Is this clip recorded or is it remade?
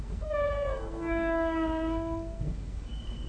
remade